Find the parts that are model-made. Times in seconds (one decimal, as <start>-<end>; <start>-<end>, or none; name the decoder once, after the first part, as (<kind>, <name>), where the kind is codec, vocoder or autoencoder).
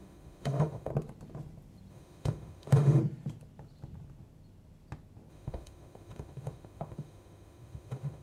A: 0.0-0.9 (autoencoder, DAC-VAE); 1.9-3.0; 5.3-8.2